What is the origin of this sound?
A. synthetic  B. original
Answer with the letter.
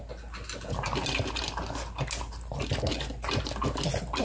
B